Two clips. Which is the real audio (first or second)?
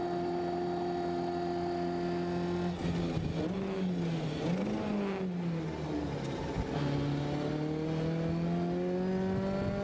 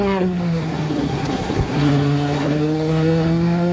first